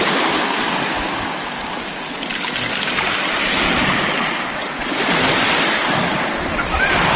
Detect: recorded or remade recorded